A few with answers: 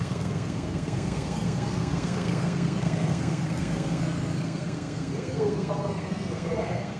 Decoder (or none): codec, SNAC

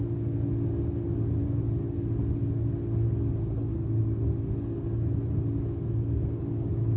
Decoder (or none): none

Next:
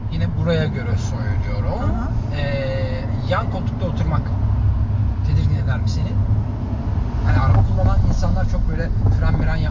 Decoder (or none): none